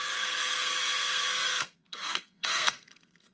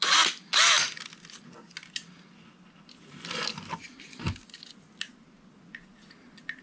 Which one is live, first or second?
second